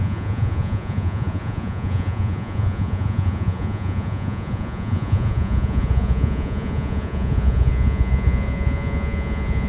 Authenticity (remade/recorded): remade